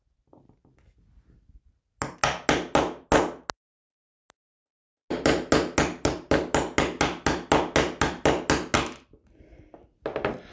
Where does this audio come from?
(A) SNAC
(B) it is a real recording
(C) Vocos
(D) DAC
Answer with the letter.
B